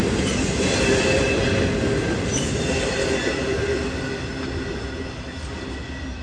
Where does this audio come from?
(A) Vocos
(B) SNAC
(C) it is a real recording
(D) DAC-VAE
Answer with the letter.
C